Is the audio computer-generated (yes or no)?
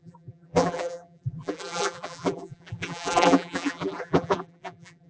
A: yes